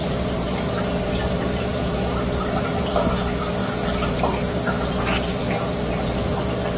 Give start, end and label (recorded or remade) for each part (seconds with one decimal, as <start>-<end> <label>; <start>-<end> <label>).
0.0-3.1 remade; 3.1-3.6 recorded; 3.6-6.2 remade; 6.2-6.8 recorded